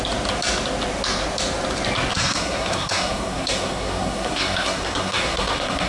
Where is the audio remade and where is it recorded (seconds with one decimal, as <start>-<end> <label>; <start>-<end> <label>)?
0.0-2.1 recorded; 2.1-5.9 remade